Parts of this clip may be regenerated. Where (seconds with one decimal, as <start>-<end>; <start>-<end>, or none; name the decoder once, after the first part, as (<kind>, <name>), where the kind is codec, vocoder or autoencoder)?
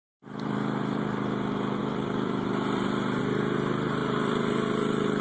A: 0.0-1.0 (vocoder, BigVGAN v2); 1.8-3.2; 4.0-5.2